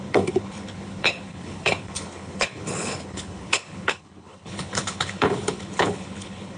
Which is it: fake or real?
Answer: fake